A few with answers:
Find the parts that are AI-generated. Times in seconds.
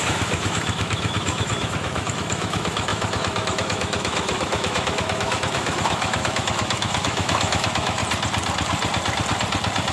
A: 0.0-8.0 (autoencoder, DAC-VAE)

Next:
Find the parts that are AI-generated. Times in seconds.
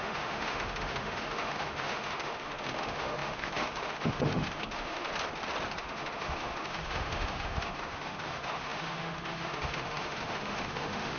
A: 0.0-5.1 (autoencoder, DAC-VAE); 5.8-11.2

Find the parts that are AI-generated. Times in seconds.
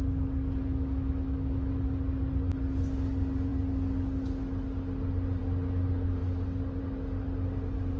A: 0.6-1.7 (autoencoder, DAC-VAE)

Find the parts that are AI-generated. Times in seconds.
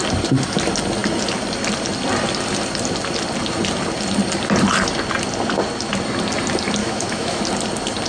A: 6.8-7.4 (autoencoder, DAC-VAE)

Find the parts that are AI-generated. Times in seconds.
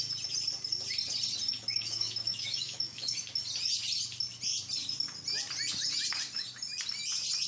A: 1.5-3.2 (autoencoder, DAC-VAE)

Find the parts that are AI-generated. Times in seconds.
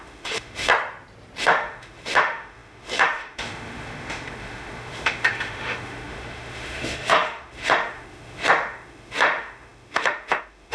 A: 0.0-0.7 (autoencoder, DAC-VAE); 1.4-10.7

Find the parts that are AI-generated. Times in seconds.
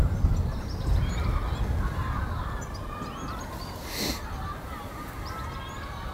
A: none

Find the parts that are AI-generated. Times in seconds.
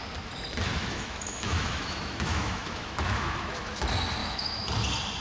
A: 0.7-3.8 (autoencoder, DAC-VAE); 4.2-4.7